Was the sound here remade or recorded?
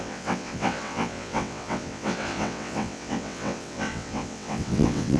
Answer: remade